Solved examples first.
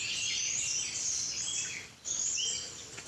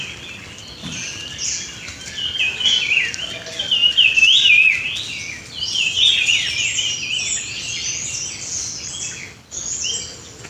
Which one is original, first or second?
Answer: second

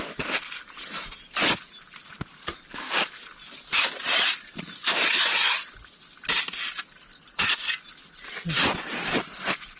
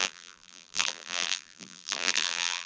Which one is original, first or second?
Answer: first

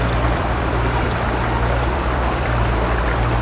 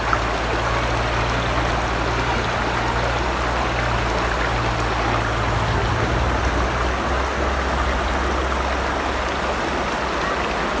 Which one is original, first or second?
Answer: second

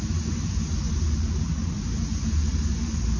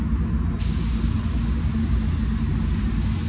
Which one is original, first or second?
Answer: second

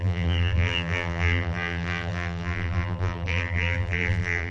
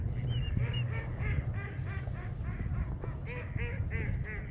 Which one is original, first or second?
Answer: second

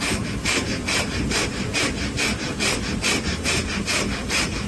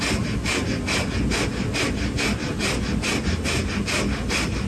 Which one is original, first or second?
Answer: second